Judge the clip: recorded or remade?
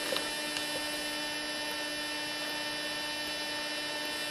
recorded